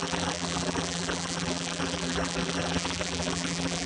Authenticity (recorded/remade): remade